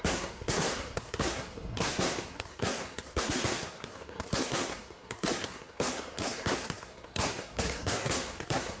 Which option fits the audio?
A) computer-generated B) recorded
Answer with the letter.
A